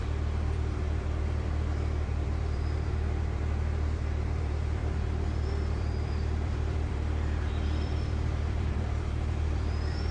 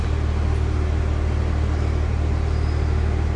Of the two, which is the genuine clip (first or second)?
second